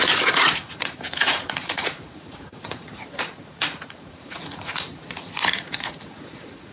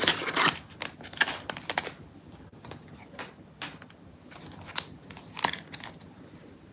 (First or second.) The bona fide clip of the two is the second